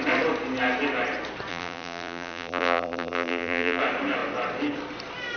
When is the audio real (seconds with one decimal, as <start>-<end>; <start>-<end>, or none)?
0.0-1.5; 3.8-5.4